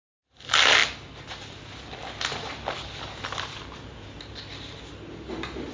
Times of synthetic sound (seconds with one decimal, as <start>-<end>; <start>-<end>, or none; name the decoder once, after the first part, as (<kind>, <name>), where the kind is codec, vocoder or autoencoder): none